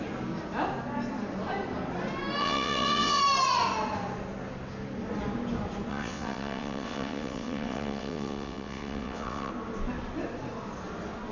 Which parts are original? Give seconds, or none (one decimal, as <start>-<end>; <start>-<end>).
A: 0.0-2.4; 3.2-5.9; 9.5-11.3